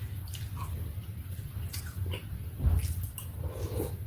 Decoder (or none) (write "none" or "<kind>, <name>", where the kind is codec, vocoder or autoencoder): none